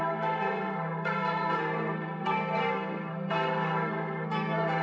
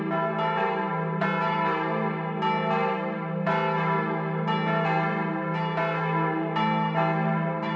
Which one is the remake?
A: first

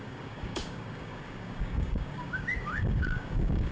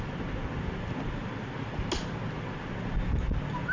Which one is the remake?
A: first